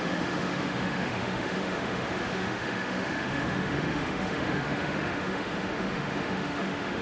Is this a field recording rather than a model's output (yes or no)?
no